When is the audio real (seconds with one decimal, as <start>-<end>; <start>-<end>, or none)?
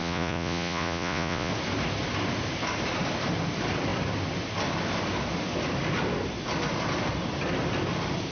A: 1.5-8.3